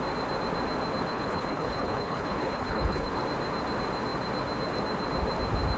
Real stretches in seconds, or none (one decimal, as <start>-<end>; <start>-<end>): 0.0-1.1; 3.2-5.8